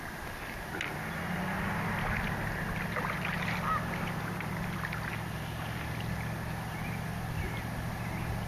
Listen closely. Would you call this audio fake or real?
real